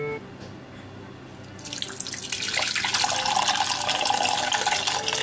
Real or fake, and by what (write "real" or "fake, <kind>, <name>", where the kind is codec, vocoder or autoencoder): real